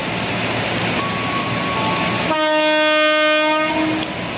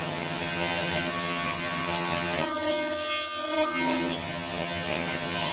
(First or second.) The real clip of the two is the first